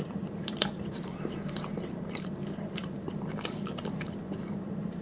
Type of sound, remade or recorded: remade